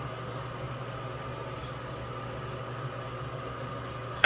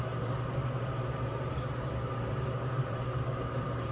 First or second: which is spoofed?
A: second